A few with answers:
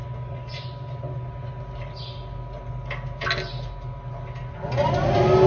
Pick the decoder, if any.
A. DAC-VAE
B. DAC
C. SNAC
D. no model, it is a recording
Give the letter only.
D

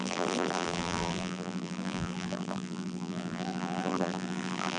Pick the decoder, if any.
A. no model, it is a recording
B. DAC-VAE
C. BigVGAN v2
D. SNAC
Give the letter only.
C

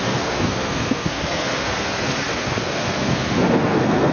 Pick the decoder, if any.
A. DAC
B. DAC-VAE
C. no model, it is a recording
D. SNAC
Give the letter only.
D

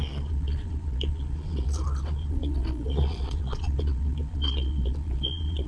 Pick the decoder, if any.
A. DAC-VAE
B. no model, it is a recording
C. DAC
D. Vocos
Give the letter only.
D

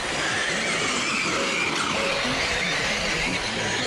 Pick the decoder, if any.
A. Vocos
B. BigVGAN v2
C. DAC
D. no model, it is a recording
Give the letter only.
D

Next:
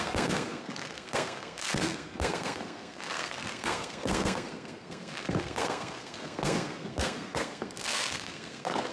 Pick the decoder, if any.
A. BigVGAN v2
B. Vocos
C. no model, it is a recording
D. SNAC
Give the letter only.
D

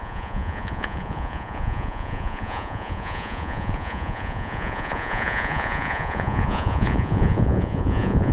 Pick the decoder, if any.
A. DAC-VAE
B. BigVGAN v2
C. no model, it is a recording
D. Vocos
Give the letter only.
D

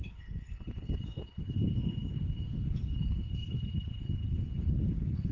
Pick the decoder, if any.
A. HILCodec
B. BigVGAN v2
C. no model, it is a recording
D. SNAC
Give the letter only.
A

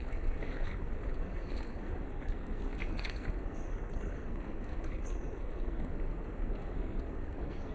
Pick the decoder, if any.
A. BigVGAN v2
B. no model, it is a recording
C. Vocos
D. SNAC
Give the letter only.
D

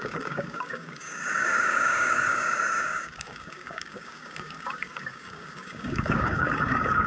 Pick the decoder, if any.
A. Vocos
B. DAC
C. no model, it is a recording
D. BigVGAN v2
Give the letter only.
B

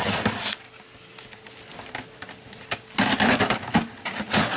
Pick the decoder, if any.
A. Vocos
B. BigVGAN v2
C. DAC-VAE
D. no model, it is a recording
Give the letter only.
D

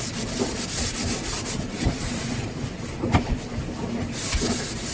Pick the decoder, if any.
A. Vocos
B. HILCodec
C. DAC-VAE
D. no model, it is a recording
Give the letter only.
D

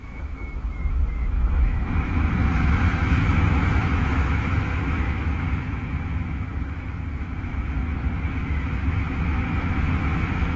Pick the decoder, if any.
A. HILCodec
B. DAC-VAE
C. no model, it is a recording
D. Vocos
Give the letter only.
B